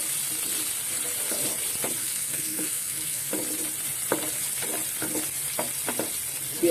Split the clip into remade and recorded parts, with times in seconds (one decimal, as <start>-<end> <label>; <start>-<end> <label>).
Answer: 0.0-2.0 recorded; 2.0-3.3 remade; 3.3-6.7 recorded